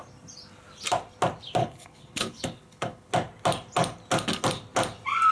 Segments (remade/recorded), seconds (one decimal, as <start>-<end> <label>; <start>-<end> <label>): 0.0-1.6 recorded; 1.6-3.1 remade; 3.1-5.3 recorded